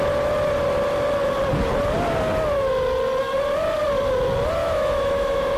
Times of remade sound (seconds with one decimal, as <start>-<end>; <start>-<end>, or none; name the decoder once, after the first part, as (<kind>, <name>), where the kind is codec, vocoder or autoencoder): 4.6-5.6 (autoencoder, DAC-VAE)